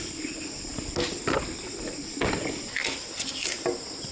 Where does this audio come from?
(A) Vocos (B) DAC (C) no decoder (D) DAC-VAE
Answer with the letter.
C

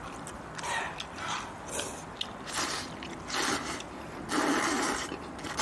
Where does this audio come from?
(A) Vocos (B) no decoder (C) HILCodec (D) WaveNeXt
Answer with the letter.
B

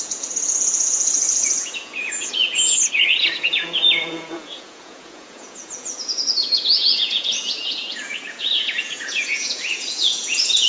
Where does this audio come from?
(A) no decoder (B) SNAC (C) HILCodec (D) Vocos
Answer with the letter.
D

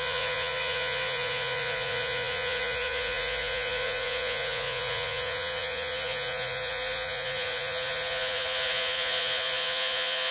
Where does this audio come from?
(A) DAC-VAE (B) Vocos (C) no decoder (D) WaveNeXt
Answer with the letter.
B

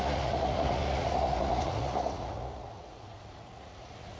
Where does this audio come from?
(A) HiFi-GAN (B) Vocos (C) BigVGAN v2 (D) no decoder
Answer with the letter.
B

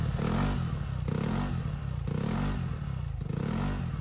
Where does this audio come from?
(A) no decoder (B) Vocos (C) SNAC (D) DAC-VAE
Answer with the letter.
A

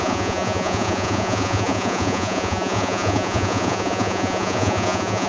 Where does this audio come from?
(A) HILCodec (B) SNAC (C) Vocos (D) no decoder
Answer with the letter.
C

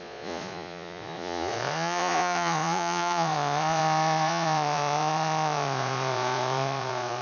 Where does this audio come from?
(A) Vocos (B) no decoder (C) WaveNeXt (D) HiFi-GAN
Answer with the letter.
A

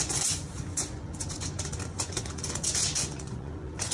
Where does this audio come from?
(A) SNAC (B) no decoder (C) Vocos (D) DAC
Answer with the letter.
C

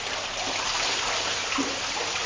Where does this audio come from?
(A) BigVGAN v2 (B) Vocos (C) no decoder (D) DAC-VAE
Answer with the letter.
C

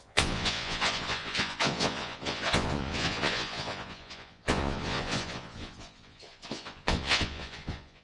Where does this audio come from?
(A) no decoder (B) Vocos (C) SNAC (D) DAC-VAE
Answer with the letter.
B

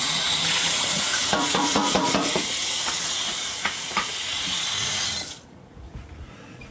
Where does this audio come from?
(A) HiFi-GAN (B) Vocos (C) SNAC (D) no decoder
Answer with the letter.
B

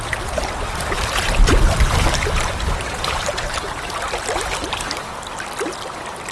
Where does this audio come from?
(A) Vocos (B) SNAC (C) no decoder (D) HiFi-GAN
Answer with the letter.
C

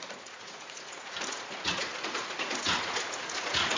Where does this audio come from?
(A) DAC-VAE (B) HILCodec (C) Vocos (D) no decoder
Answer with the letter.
C